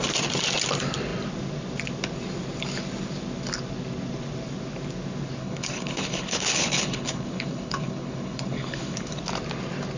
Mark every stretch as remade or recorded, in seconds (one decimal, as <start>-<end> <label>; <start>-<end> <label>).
0.0-5.4 recorded; 5.4-9.2 remade; 9.2-10.0 recorded